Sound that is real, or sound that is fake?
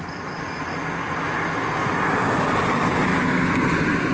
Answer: real